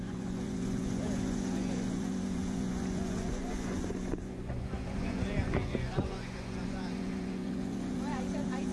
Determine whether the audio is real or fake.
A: fake